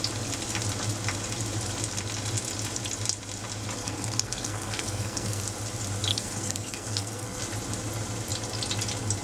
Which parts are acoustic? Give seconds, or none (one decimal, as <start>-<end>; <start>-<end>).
0.0-3.8; 5.4-6.1; 7.4-9.2